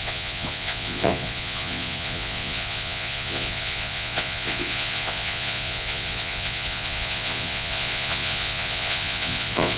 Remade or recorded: remade